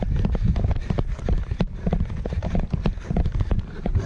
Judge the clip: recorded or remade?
recorded